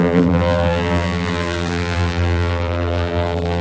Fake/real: fake